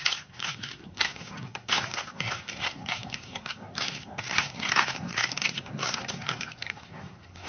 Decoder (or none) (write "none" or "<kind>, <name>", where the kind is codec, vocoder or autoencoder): codec, SNAC